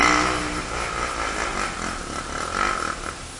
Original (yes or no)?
yes